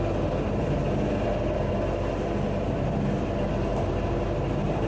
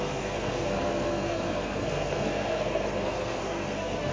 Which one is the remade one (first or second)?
second